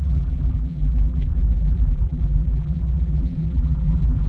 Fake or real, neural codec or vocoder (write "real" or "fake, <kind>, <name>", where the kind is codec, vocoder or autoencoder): fake, vocoder, BigVGAN v2